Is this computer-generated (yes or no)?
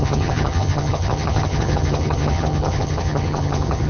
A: yes